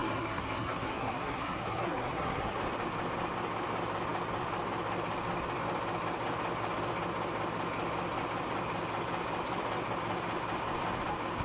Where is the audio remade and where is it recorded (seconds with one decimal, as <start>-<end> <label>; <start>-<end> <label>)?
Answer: 0.0-2.6 remade; 2.6-11.4 recorded